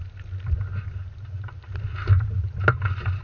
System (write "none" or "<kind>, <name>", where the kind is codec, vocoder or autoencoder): none